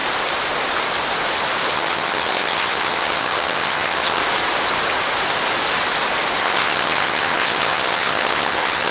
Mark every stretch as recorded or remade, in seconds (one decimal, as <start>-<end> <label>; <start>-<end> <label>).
0.0-1.7 recorded; 1.7-4.2 remade; 4.2-6.4 recorded; 6.4-8.9 remade